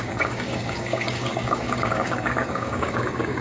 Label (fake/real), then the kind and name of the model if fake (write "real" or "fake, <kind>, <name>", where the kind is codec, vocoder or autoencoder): fake, codec, DAC